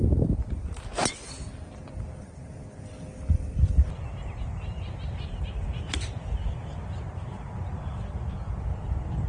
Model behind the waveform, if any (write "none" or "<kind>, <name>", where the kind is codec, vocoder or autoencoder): none